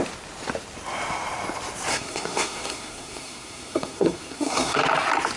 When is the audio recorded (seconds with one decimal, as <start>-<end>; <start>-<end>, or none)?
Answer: 0.0-1.9; 4.8-5.4